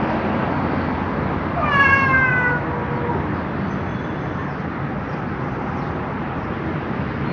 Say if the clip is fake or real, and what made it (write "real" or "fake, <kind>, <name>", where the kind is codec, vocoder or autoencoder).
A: real